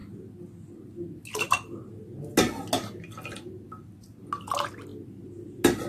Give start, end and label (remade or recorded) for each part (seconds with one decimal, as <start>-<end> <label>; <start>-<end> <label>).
0.0-5.9 recorded